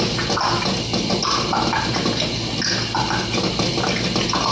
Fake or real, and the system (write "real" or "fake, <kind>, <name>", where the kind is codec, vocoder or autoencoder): real